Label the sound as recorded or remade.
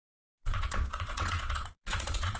remade